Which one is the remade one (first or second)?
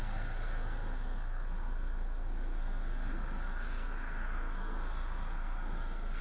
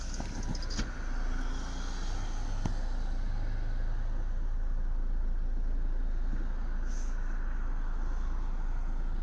first